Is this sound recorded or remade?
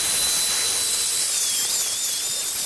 recorded